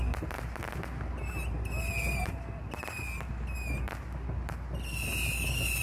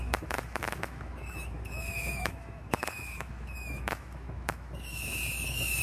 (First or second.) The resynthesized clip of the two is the second